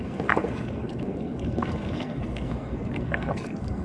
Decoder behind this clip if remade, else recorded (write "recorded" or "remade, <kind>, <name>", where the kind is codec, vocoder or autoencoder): remade, codec, SNAC